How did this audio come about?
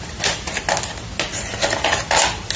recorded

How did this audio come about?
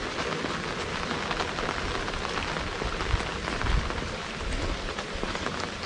recorded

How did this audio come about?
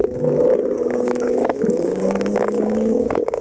remade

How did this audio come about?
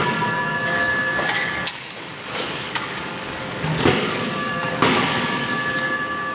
remade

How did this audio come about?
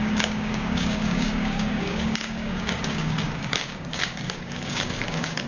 remade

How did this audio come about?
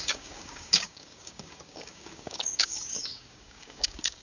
remade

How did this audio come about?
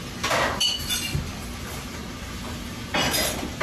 recorded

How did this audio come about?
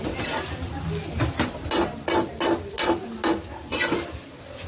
recorded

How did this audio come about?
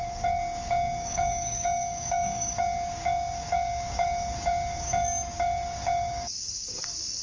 remade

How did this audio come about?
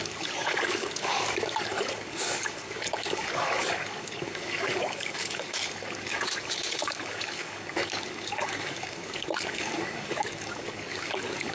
remade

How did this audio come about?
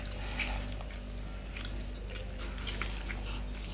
recorded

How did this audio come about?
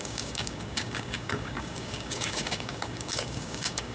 remade